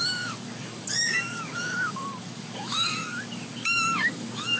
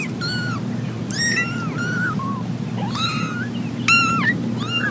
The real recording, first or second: second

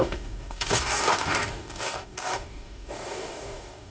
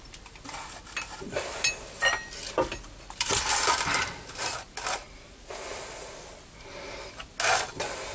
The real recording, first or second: second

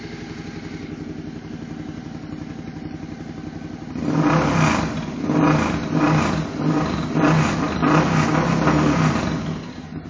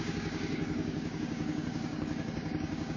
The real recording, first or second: first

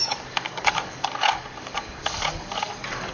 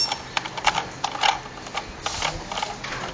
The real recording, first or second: second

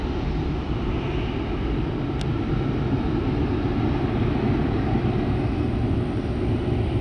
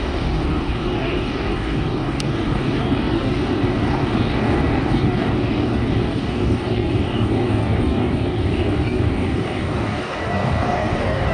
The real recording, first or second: first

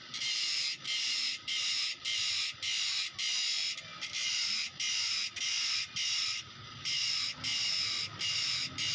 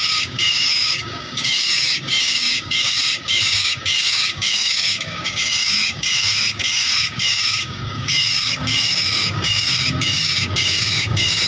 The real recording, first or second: first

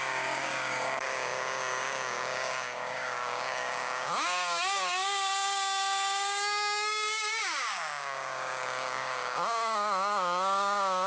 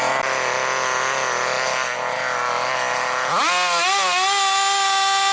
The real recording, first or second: second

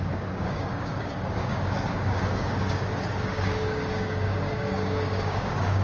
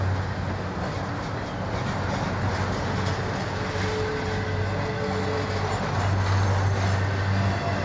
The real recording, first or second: second